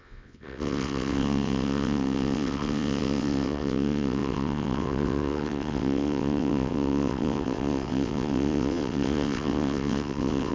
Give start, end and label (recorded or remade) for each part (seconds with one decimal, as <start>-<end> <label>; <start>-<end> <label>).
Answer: 0.0-10.5 remade

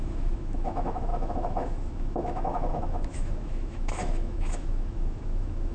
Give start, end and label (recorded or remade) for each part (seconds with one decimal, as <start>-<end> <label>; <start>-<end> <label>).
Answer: 0.0-5.7 remade

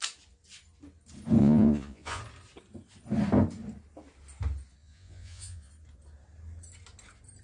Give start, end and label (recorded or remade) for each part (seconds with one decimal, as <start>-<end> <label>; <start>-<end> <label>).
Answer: 0.0-1.4 recorded; 1.4-2.2 remade; 2.2-4.8 recorded; 4.8-5.7 remade; 5.7-7.4 recorded

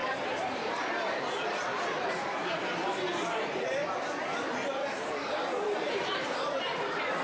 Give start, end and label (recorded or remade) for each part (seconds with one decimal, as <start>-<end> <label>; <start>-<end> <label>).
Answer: 0.0-0.8 remade; 0.8-4.8 recorded; 4.8-6.6 remade; 6.6-7.2 recorded

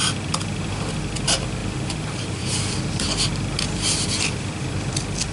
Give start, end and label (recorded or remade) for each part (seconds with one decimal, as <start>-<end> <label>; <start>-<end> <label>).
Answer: 0.0-1.6 recorded; 1.6-2.7 remade; 2.7-5.3 recorded

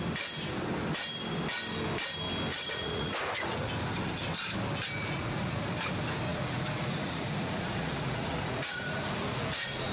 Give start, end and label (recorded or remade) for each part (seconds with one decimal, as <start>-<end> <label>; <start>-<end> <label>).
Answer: 0.0-2.5 recorded; 2.5-3.7 remade; 3.7-5.0 recorded; 5.0-5.7 remade; 5.7-6.3 recorded; 6.3-9.9 remade